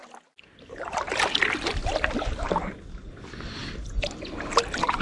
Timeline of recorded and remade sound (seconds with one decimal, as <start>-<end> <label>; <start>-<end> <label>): 0.0-5.0 recorded

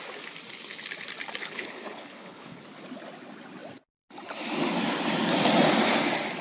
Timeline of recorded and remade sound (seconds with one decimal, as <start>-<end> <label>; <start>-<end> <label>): 0.0-1.4 recorded; 1.4-2.6 remade; 2.6-6.4 recorded

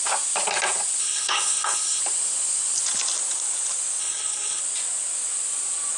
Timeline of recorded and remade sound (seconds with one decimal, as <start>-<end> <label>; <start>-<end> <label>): 0.0-1.0 recorded; 1.0-2.0 remade; 2.0-4.0 recorded; 4.0-4.6 remade; 4.6-6.0 recorded